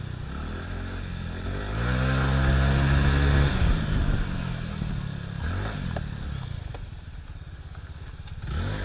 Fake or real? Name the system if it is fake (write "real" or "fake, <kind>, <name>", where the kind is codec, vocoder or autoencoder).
real